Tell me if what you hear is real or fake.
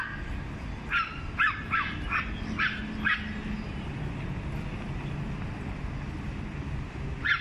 real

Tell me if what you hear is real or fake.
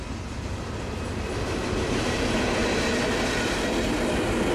real